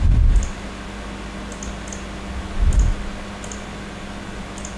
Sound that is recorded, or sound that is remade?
recorded